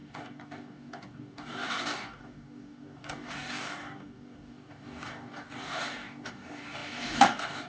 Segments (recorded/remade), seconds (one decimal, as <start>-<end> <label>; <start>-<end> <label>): 0.0-7.7 remade